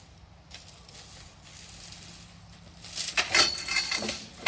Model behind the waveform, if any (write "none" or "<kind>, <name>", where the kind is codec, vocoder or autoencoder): none